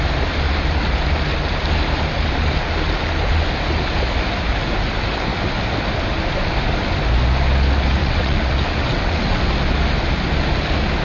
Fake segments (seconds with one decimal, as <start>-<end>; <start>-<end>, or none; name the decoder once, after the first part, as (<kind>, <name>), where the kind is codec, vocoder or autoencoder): 8.0-9.4 (vocoder, WaveNeXt)